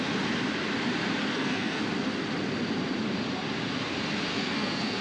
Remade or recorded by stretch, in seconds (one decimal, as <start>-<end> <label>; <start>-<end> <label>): 0.0-1.3 recorded; 1.3-1.8 remade; 1.8-4.3 recorded; 4.3-5.0 remade